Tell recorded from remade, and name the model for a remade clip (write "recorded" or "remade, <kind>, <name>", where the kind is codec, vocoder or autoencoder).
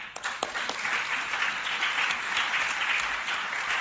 recorded